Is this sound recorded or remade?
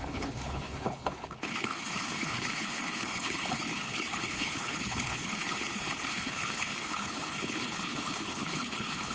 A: remade